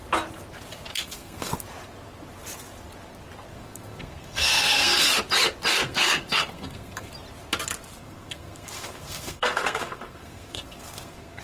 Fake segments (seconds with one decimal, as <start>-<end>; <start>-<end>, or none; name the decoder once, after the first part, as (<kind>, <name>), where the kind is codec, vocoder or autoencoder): 0.9-1.5 (codec, SNAC); 3.5-5.1; 5.7-7.1; 7.9-11.4